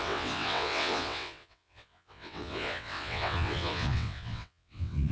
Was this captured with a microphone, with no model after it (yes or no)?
no